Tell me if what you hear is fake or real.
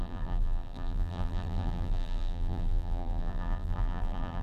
fake